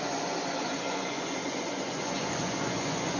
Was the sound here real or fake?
fake